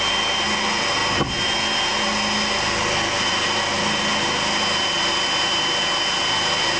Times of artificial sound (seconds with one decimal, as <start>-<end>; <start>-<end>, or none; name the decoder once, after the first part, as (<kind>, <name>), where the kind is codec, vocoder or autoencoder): none